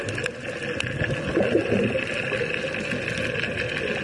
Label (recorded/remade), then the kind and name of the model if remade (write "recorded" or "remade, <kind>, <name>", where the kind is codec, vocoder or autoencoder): recorded